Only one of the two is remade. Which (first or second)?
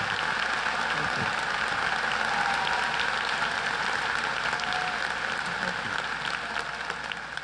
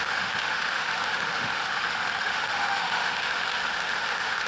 second